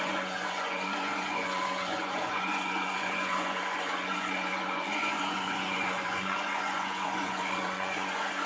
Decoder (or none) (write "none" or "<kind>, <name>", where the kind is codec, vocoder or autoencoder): vocoder, Vocos